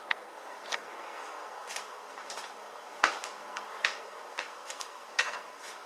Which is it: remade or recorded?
remade